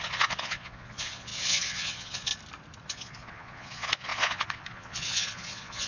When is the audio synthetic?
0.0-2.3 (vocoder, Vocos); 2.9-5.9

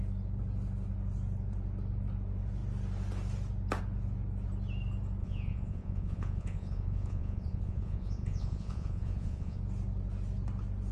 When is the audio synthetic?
5.2-9.6 (vocoder, Vocos)

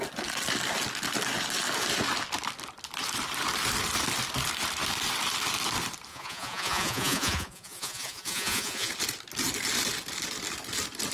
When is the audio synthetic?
6.1-8.9 (vocoder, Vocos)